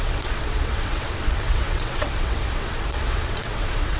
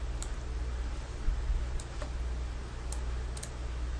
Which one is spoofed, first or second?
first